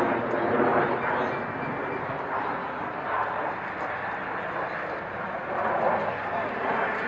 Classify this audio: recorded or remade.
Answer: recorded